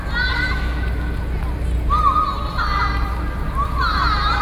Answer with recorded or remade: recorded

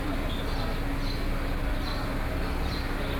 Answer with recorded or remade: recorded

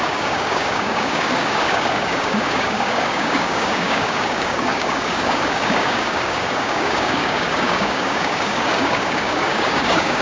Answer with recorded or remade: remade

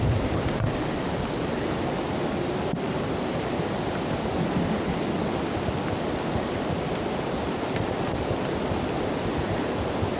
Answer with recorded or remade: recorded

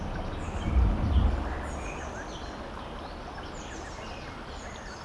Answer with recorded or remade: recorded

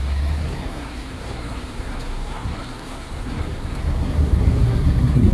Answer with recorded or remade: remade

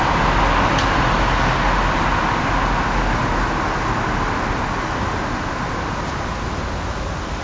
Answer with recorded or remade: recorded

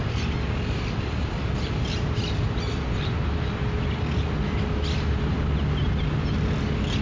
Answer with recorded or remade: recorded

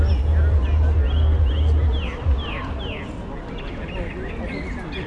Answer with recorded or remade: recorded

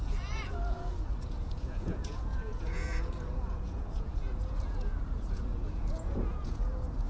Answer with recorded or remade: remade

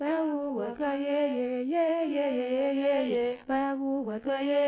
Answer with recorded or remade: remade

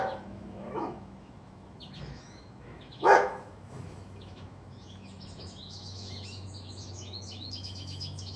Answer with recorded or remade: remade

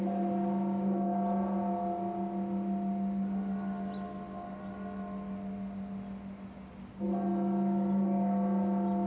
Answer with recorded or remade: recorded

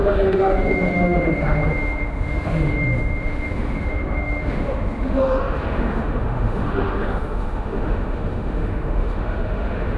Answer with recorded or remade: remade